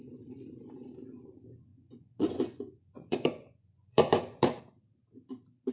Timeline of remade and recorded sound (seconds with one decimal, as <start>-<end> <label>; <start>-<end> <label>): 0.0-1.7 recorded; 1.7-4.6 remade; 4.6-5.7 recorded